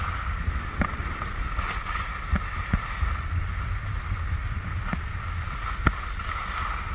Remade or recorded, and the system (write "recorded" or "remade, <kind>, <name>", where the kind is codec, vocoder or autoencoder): recorded